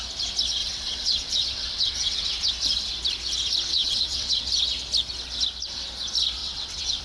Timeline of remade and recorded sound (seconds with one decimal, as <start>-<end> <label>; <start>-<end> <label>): 0.0-0.6 recorded; 0.6-2.5 remade; 2.5-3.7 recorded; 3.7-4.5 remade; 4.5-6.4 recorded; 6.4-7.0 remade